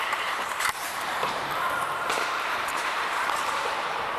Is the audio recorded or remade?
remade